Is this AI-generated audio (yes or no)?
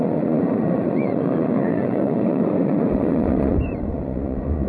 yes